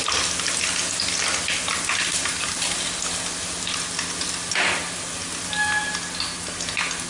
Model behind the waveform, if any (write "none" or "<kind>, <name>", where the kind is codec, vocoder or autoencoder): none